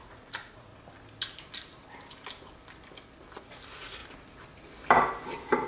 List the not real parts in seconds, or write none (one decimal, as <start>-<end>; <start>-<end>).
0.0-0.7; 3.4-4.0